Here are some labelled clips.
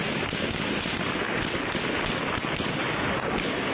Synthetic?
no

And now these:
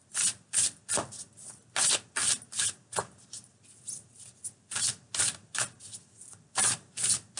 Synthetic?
no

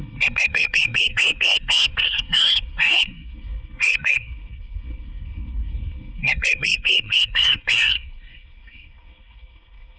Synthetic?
yes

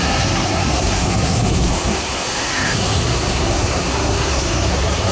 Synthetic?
yes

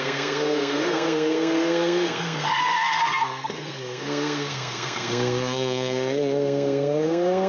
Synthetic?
yes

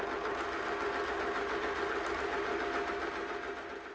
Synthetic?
no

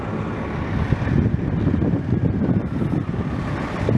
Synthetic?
no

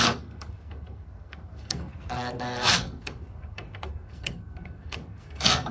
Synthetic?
yes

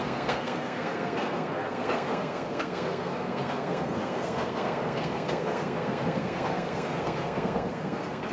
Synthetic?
yes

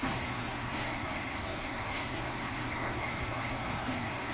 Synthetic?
yes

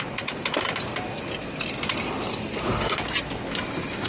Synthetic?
no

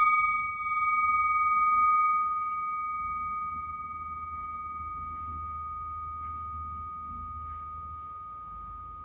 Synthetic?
no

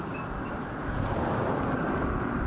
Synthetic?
no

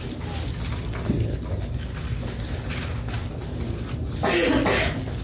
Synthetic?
no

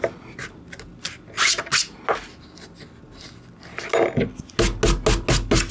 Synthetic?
no